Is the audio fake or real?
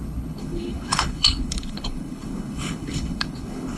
fake